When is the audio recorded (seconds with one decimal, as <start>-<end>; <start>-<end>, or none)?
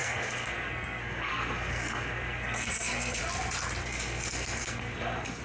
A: 3.2-3.8